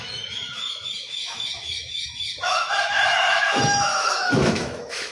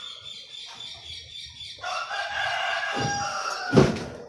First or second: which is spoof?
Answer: first